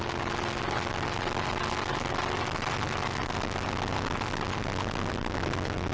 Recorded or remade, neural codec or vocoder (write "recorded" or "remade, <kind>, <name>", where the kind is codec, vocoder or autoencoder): recorded